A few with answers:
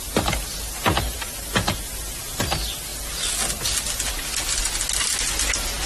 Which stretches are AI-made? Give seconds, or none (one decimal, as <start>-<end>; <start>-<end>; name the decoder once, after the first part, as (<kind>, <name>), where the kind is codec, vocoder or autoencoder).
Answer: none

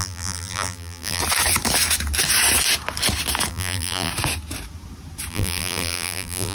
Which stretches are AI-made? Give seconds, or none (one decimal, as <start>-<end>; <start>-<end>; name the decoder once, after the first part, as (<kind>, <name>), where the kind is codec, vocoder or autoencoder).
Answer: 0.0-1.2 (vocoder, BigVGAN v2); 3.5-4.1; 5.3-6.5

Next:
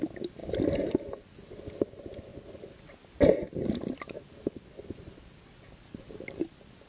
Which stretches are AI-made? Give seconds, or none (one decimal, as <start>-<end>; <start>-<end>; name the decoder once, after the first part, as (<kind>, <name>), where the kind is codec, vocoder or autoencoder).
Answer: 2.3-6.4 (vocoder, BigVGAN v2)